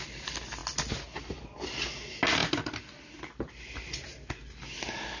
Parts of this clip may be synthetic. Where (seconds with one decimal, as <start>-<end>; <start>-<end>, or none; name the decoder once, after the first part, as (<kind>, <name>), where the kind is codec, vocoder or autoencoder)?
none